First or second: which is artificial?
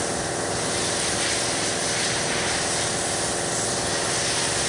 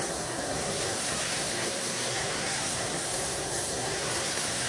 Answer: second